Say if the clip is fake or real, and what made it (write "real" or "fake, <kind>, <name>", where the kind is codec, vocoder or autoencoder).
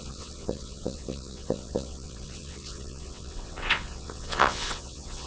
fake, vocoder, WaveNeXt